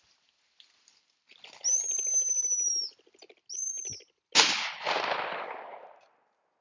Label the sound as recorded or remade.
recorded